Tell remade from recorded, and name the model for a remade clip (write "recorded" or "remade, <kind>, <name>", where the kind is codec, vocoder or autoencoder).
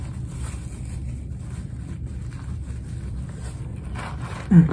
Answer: recorded